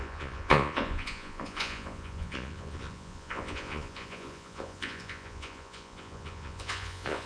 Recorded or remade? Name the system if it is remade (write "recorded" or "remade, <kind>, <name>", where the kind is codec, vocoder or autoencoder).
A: remade, vocoder, Vocos